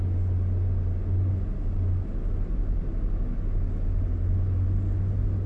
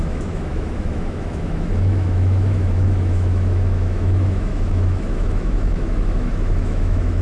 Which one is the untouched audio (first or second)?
first